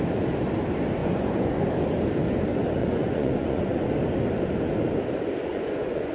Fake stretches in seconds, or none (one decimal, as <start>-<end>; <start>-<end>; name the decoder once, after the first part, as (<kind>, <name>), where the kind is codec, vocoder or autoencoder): 1.0-1.6 (vocoder, Vocos); 2.8-3.9; 5.5-6.1